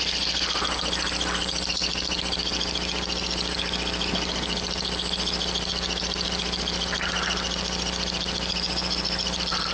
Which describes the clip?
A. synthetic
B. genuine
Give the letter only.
B